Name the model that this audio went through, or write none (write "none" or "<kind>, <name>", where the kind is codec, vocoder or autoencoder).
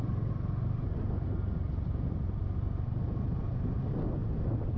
none